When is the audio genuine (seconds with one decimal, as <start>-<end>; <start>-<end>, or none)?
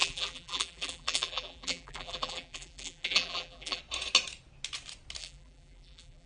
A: 3.8-5.2